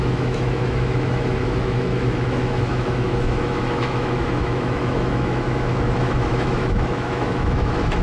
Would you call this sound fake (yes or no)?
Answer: yes